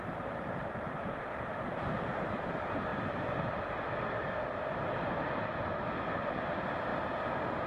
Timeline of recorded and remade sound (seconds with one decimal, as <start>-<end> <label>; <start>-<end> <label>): 0.0-2.9 remade; 2.9-5.9 recorded; 5.9-6.9 remade; 6.9-7.7 recorded